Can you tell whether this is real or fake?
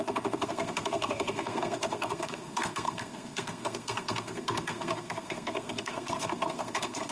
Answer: fake